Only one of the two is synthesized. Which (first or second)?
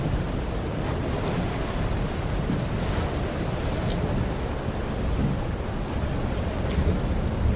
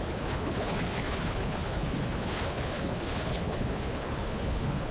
second